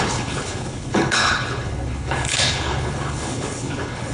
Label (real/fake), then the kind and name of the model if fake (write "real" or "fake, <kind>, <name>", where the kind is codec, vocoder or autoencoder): fake, codec, HILCodec